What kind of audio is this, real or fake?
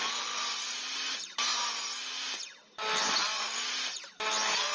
real